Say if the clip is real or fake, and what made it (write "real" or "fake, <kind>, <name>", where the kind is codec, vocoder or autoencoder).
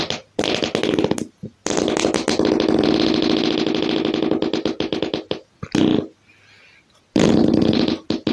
real